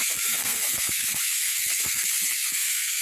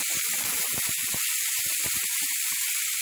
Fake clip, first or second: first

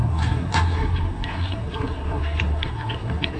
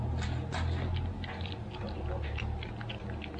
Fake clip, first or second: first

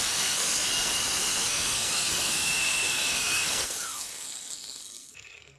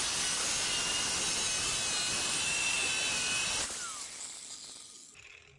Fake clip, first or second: first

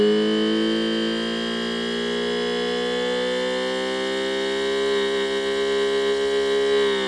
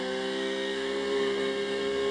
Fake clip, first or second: second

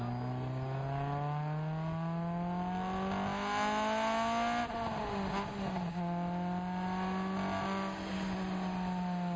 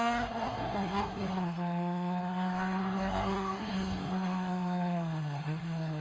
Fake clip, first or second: second